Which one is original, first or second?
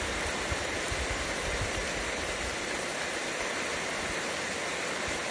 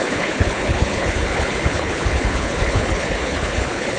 first